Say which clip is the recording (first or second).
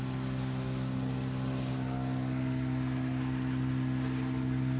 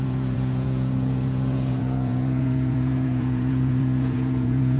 first